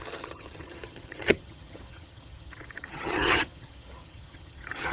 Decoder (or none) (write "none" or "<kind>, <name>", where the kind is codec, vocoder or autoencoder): vocoder, HiFi-GAN